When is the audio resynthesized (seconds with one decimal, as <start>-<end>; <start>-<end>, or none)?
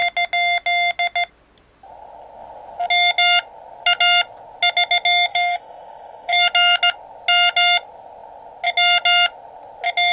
5.3-6.3